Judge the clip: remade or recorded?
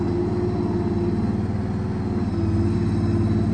recorded